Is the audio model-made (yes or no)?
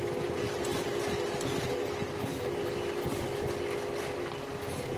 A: no